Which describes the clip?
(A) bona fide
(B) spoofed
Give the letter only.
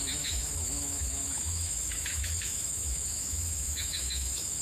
B